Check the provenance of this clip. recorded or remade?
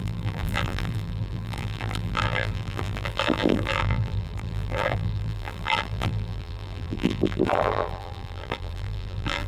remade